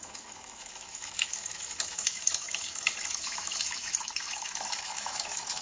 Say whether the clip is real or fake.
fake